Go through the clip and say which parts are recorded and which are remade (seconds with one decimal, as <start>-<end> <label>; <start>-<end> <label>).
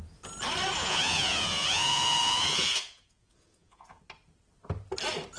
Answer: 0.0-0.8 recorded; 0.8-4.0 remade; 4.0-5.4 recorded